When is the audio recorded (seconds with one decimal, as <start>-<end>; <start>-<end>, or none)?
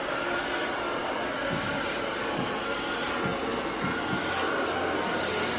0.0-5.6